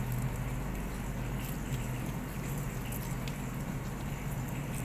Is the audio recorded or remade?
recorded